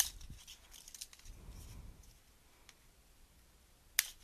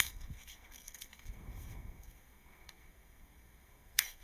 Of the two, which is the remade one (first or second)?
second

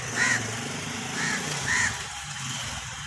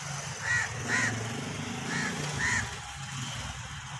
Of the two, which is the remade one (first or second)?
first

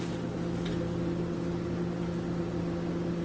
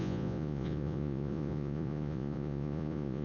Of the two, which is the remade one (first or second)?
second